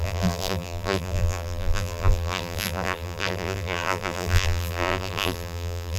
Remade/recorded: remade